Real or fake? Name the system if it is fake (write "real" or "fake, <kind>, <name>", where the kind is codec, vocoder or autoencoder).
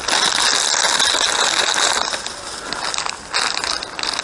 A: real